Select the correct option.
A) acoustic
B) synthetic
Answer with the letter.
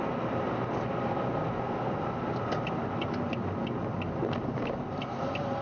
A